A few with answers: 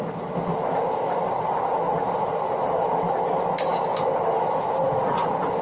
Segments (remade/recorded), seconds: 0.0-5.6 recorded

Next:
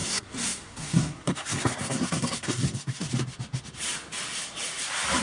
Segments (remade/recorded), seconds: 0.0-3.1 remade; 3.1-5.2 recorded

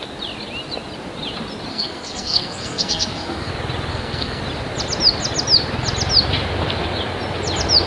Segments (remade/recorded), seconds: 0.0-1.7 recorded; 1.7-3.5 remade; 3.5-3.9 recorded; 3.9-4.4 remade; 4.4-7.9 recorded

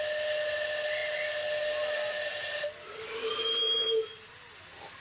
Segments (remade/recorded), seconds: 0.0-5.0 recorded

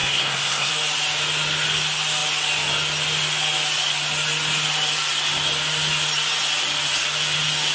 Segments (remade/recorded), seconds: 0.0-0.7 remade; 0.7-7.7 recorded

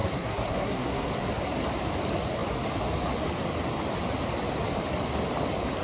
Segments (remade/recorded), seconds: 0.0-1.1 remade; 1.1-5.8 recorded

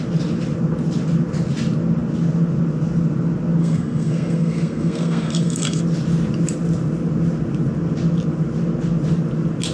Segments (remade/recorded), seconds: 0.0-3.6 recorded; 3.6-5.8 remade; 5.8-9.7 recorded

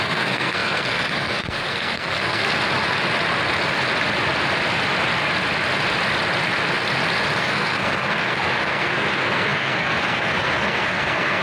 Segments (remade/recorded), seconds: 0.0-2.4 remade; 2.4-7.4 recorded; 7.4-11.4 remade